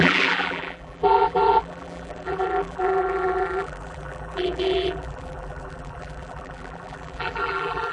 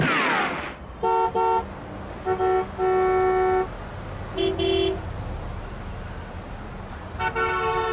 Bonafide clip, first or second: second